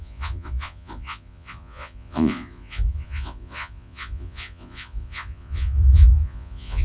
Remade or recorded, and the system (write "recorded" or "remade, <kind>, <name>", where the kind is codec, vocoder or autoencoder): remade, vocoder, Vocos